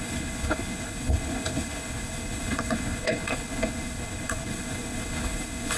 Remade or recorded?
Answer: remade